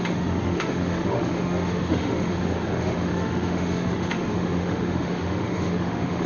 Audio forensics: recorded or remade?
remade